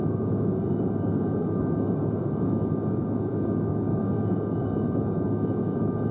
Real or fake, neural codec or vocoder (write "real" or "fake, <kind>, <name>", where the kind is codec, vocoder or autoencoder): fake, codec, DAC